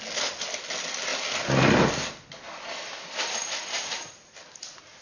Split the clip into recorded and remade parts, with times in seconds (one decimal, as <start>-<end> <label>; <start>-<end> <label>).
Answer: 0.0-5.0 recorded